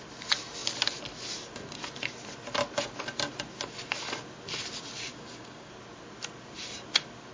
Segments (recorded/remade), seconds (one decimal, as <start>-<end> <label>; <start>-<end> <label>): 0.0-5.1 recorded; 5.1-5.7 remade; 5.7-7.3 recorded